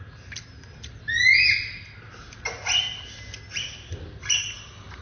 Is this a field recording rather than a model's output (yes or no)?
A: yes